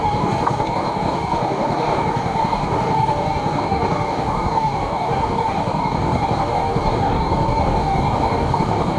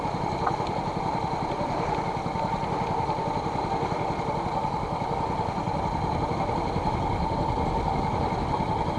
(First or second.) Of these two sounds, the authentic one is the second